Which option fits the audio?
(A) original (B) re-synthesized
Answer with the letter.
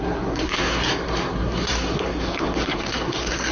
B